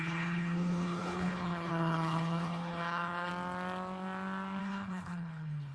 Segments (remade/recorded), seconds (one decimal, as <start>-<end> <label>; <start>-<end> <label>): 0.0-3.3 remade; 3.3-4.6 recorded; 4.6-5.7 remade